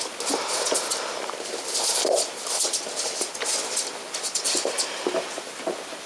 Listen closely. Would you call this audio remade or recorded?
recorded